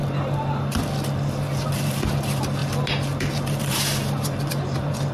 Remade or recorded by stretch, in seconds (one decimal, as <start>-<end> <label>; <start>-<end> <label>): 0.0-0.8 recorded; 0.8-2.6 remade; 2.6-3.2 recorded; 3.2-5.1 remade